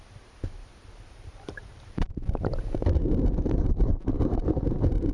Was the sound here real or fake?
fake